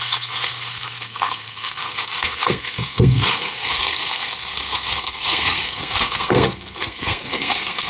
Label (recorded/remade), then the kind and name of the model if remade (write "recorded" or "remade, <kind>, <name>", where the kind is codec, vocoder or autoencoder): remade, codec, SNAC